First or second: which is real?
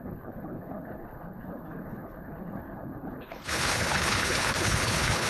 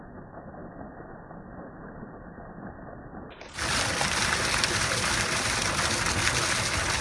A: second